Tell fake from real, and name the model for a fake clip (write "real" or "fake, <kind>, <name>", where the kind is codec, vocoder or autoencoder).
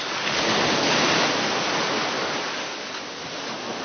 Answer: real